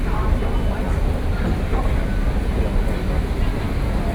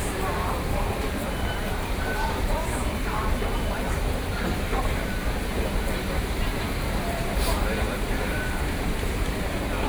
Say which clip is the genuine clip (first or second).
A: first